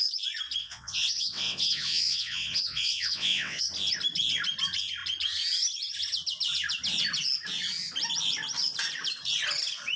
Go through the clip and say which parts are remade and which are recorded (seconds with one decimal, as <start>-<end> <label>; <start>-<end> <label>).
0.0-0.6 recorded; 0.6-3.6 remade; 3.6-10.0 recorded